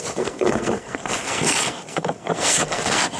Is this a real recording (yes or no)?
no